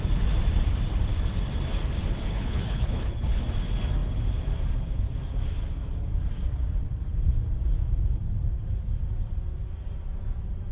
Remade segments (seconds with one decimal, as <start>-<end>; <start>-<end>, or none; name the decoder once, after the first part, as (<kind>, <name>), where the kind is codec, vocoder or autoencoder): 2.3-3.4 (codec, HILCodec)